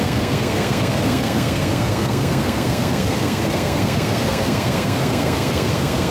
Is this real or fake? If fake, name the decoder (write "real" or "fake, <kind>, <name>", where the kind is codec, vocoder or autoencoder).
fake, codec, SNAC